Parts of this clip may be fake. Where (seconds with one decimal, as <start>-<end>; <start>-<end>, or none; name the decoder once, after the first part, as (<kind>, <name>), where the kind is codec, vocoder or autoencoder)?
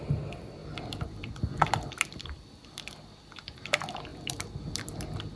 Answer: 0.6-3.6 (vocoder, BigVGAN v2); 4.1-5.4